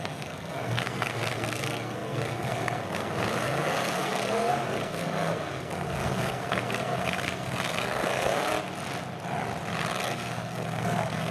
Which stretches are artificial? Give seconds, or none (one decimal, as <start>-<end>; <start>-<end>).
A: 0.0-8.5; 10.0-11.3